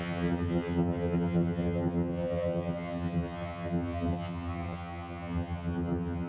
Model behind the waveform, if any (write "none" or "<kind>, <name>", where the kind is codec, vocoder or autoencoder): vocoder, HiFi-GAN